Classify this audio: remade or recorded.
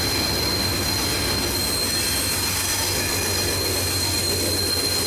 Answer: recorded